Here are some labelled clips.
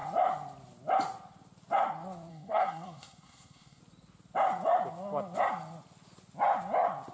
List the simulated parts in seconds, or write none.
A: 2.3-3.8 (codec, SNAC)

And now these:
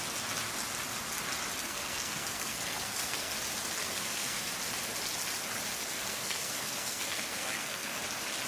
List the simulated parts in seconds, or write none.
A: 1.6-3.3 (codec, SNAC); 3.8-4.5; 5.7-8.0

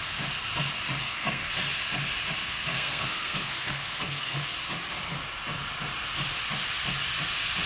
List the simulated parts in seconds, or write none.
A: 1.0-1.5 (codec, SNAC); 2.4-4.4

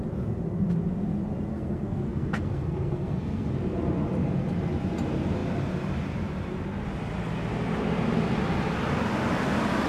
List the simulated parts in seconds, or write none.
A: 1.5-3.5 (codec, SNAC)

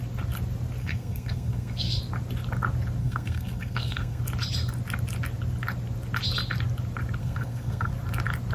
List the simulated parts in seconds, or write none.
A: 0.8-2.0 (codec, SNAC); 3.0-4.2; 7.2-7.9

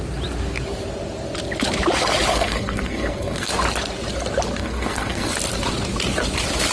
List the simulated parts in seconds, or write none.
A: 2.3-3.5 (codec, SNAC); 4.6-5.3

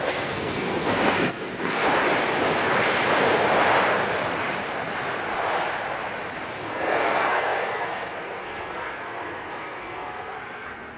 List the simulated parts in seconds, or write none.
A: 0.0-1.8 (codec, SNAC); 6.6-11.0

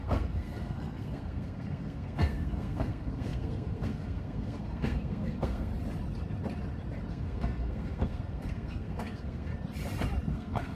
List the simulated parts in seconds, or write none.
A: 0.0-5.7 (codec, SNAC); 7.1-9.5; 10.3-10.8